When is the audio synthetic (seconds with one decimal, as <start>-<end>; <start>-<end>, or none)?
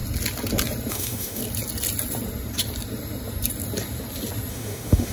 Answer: 0.9-1.4; 4.5-5.1